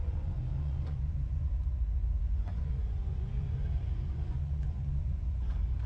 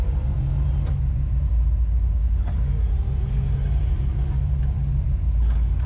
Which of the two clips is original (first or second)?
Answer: second